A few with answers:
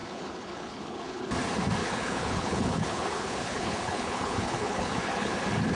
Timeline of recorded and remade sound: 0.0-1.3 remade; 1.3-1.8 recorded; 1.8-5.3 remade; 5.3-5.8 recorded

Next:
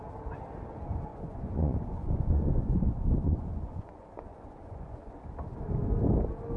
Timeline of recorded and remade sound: 0.0-1.1 recorded; 1.1-5.1 remade; 5.1-6.6 recorded

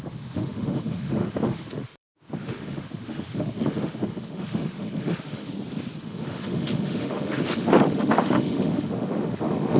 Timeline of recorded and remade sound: 0.0-5.5 remade; 5.5-6.0 recorded; 6.0-9.8 remade

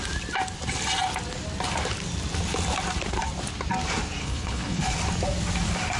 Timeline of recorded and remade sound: 0.0-4.2 recorded; 4.2-4.8 remade; 4.8-6.0 recorded